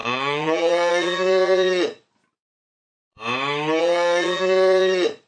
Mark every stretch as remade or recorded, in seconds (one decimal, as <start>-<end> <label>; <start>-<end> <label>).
0.0-2.2 remade; 2.2-3.8 recorded; 3.8-5.3 remade